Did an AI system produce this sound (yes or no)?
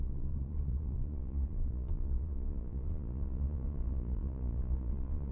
yes